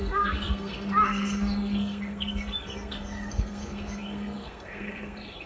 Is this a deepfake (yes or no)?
yes